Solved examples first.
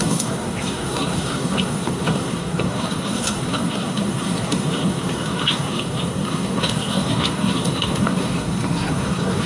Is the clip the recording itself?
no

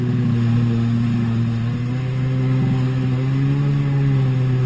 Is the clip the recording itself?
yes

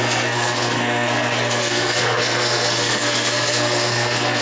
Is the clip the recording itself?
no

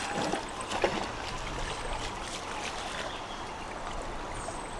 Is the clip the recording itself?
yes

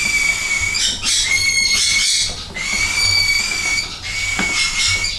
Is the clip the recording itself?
yes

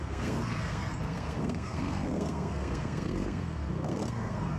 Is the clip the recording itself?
no